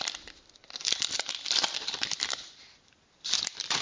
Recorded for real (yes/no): no